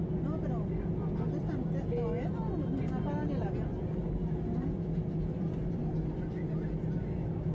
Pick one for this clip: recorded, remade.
recorded